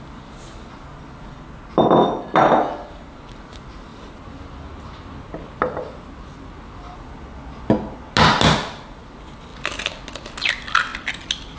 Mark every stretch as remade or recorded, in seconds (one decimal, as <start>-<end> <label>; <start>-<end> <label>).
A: 0.0-9.5 recorded; 9.5-10.5 remade; 10.5-10.9 recorded; 10.9-11.6 remade